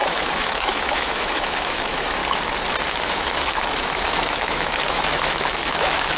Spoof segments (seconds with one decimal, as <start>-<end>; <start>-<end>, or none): 0.0-2.2; 2.9-6.2